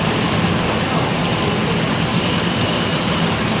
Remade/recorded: recorded